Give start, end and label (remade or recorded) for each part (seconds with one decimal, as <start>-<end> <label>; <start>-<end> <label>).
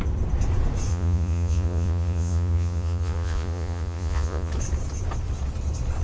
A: 0.0-0.9 recorded; 0.9-4.5 remade; 4.5-6.0 recorded